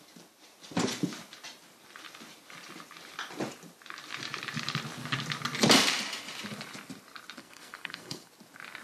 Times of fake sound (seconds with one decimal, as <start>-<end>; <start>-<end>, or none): 7.4-8.3